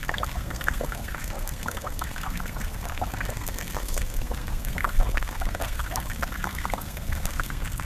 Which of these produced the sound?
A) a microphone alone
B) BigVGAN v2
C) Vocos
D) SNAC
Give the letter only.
D